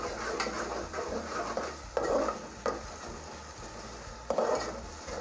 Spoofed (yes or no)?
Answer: no